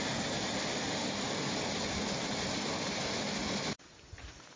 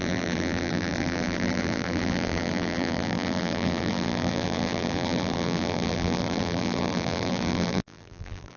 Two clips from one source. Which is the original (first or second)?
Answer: first